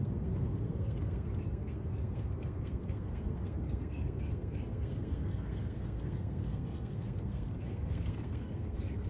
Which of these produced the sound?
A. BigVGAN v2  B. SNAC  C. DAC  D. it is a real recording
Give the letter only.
B